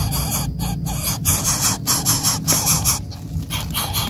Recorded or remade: recorded